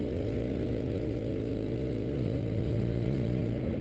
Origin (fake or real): fake